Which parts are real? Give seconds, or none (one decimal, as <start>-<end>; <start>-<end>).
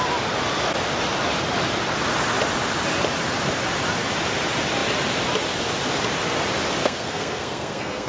0.0-6.8